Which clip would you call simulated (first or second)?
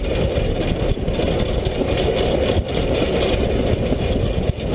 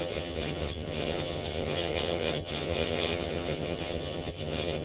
second